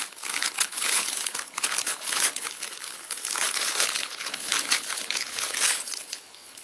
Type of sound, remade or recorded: remade